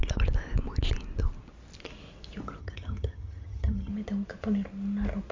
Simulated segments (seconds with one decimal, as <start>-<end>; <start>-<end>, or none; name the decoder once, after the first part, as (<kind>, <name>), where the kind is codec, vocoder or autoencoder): 2.6-3.9 (vocoder, HiFi-GAN)

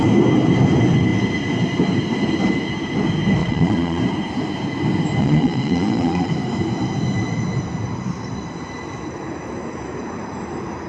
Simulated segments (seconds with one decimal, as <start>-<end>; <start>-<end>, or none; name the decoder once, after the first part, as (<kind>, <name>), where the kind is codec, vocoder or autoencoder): 3.4-4.0 (vocoder, Vocos); 5.2-6.3

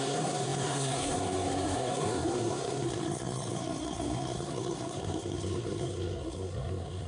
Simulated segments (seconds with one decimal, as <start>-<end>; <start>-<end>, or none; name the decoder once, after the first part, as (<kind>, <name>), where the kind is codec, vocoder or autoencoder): 0.0-7.1 (codec, SNAC)

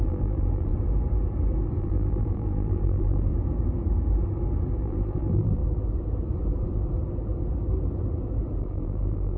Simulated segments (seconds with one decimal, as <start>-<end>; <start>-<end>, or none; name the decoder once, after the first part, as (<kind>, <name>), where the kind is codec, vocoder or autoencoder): 0.0-0.7 (vocoder, BigVGAN v2); 1.8-3.3; 4.8-5.6; 8.6-9.4

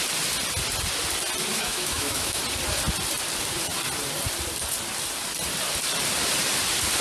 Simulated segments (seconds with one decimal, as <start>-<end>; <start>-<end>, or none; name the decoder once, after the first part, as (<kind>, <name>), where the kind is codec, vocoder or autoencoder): 1.5-2.4 (autoencoder, DAC-VAE)

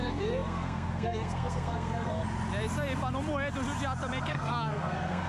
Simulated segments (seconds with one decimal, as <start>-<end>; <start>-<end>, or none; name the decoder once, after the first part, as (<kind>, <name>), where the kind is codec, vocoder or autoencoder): 0.0-2.2 (codec, SNAC); 4.3-5.3

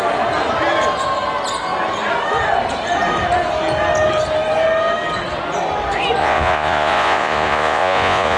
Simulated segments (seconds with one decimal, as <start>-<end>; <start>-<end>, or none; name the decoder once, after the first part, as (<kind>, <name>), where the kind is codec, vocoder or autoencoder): 6.2-8.4 (vocoder, Vocos)